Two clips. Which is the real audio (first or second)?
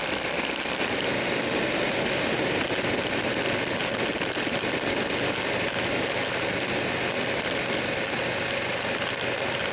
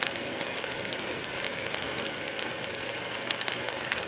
first